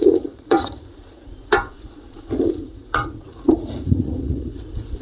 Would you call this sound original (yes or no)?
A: no